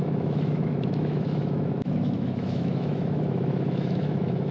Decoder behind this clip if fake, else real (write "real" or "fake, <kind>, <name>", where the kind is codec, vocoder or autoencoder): fake, autoencoder, DAC-VAE